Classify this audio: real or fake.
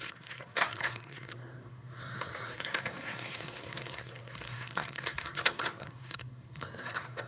fake